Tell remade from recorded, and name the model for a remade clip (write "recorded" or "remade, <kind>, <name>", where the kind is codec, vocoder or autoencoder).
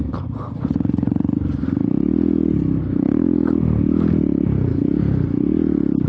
recorded